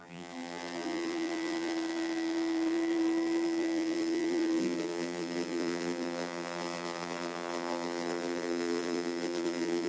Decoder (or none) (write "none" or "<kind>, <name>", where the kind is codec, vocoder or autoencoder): vocoder, BigVGAN v2